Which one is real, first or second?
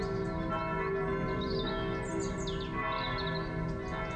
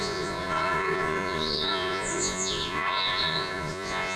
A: first